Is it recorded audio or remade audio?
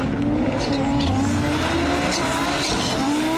recorded